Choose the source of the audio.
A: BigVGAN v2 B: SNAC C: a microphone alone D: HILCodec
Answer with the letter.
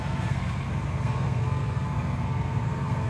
B